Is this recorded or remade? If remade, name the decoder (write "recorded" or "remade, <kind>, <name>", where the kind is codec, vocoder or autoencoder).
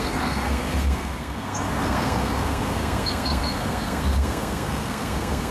remade, codec, SNAC